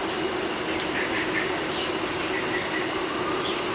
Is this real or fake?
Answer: real